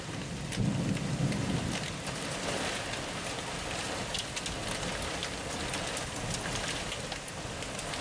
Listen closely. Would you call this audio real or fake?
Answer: real